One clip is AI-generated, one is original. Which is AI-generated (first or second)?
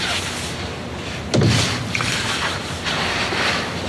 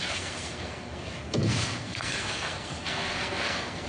second